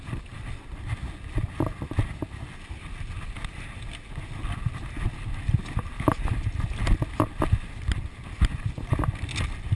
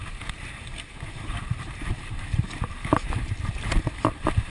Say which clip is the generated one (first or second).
second